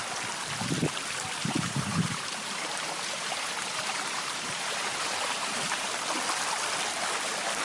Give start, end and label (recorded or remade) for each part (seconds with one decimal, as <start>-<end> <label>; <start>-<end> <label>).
0.0-1.4 recorded; 1.4-6.0 remade; 6.0-7.6 recorded